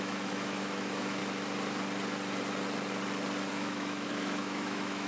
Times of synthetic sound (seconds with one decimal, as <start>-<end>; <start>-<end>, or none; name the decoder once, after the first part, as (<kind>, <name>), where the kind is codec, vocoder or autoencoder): 0.0-1.2 (autoencoder, DAC-VAE); 3.5-5.1